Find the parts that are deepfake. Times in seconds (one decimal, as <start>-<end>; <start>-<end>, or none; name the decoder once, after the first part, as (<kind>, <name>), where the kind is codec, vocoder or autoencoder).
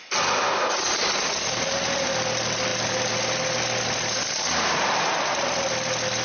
none